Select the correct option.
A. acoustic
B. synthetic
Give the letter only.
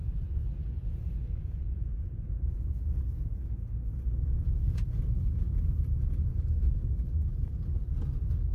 B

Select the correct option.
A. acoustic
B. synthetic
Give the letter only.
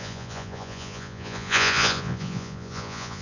B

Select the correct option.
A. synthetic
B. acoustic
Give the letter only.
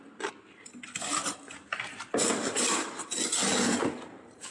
B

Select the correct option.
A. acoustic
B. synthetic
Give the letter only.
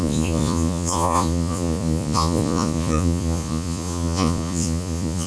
B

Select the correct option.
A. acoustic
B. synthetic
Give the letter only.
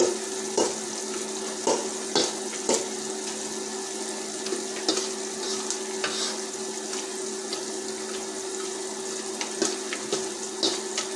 A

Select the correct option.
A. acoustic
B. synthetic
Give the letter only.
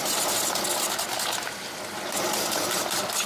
A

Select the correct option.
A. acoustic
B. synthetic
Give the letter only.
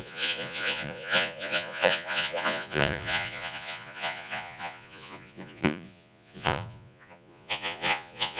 B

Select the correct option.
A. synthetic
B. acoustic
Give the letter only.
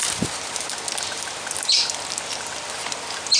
B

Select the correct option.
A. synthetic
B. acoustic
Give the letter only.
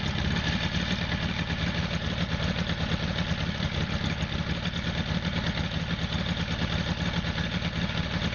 B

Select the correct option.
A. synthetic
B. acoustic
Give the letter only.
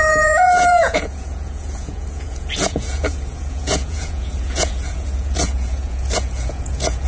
A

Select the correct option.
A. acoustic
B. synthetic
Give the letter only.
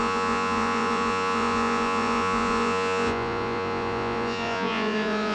B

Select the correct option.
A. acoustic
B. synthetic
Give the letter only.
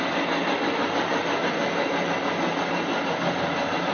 A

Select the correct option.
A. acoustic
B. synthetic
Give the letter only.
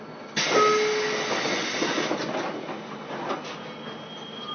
A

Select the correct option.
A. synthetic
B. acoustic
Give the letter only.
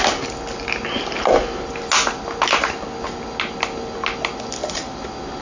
B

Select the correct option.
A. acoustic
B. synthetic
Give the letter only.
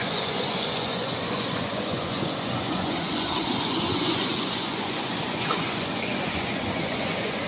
B